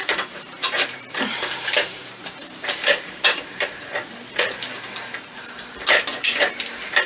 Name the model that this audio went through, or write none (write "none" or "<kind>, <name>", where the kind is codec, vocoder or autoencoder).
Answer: vocoder, BigVGAN v2